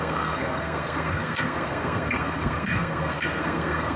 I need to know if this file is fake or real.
fake